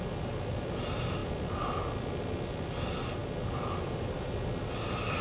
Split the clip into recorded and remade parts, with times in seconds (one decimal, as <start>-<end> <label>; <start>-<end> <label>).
0.0-5.2 recorded